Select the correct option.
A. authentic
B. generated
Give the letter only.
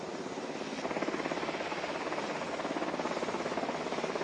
A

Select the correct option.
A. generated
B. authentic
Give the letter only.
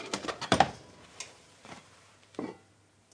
A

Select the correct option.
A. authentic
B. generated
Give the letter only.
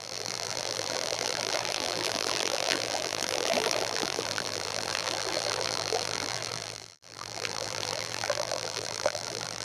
B